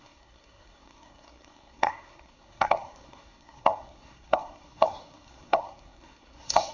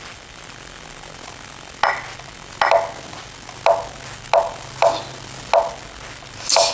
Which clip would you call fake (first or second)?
first